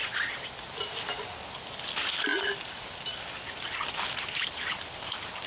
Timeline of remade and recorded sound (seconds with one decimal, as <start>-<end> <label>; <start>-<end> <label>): 0.0-5.5 recorded